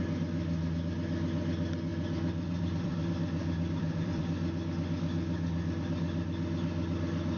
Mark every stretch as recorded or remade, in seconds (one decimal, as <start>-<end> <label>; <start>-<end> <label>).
0.0-1.9 recorded; 1.9-4.2 remade; 4.2-7.4 recorded